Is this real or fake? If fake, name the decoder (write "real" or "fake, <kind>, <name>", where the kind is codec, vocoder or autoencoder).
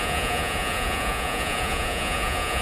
fake, vocoder, Vocos